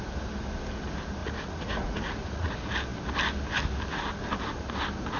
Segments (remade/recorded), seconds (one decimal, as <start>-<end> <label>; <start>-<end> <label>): 0.0-1.2 recorded; 1.2-2.5 remade; 2.5-5.2 recorded